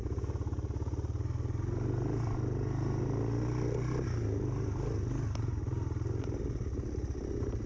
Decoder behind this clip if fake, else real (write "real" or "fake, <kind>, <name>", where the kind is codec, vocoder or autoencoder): real